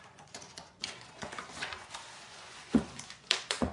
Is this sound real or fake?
fake